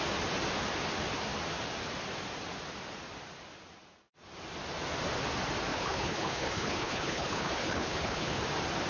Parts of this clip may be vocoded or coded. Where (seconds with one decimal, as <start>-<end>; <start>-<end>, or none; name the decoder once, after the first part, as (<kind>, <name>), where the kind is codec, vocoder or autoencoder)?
5.7-8.4 (codec, HILCodec)